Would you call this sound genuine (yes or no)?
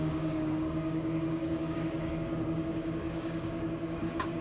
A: no